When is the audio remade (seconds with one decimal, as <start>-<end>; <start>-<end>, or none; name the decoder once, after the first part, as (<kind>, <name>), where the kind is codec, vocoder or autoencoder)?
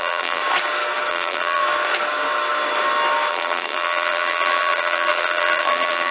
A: 0.0-0.4 (vocoder, BigVGAN v2); 1.1-1.6; 3.3-6.1